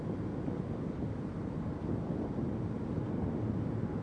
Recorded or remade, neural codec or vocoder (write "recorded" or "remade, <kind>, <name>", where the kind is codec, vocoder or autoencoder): recorded